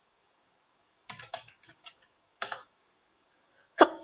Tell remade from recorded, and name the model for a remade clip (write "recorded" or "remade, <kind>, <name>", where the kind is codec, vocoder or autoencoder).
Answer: remade, codec, DAC